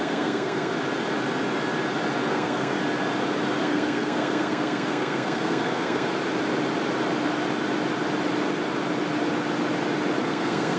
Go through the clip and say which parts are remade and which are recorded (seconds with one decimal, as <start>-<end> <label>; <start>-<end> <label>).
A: 0.0-0.7 remade; 0.7-2.3 recorded; 2.3-2.8 remade; 2.8-3.6 recorded; 3.6-6.1 remade; 6.1-10.2 recorded; 10.2-10.8 remade